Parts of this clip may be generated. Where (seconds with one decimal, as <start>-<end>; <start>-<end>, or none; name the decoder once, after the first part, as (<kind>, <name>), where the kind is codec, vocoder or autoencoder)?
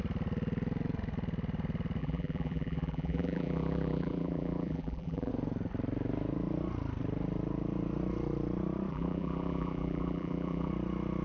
2.0-5.3 (vocoder, BigVGAN v2); 8.9-10.7